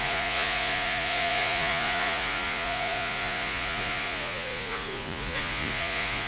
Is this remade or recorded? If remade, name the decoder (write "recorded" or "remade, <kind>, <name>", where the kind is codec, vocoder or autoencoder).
remade, vocoder, Vocos